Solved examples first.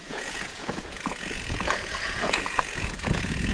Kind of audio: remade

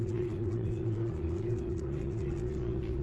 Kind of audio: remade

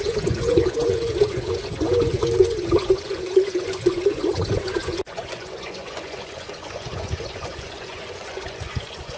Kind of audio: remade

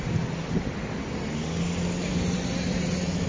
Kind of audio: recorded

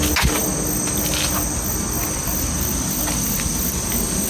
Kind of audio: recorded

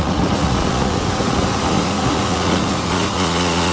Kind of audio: remade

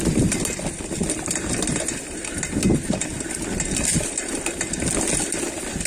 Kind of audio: recorded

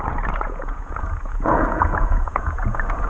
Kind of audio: remade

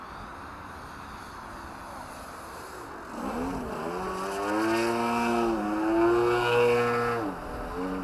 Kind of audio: recorded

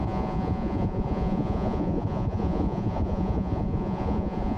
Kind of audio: remade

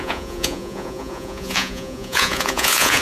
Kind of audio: remade